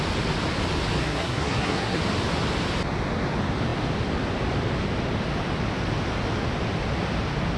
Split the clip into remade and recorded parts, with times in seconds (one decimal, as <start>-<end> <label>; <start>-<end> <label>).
0.0-1.0 recorded; 1.0-2.0 remade; 2.0-7.6 recorded